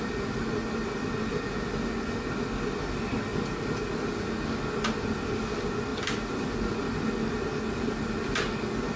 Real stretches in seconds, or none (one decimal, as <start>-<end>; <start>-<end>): 0.0-9.0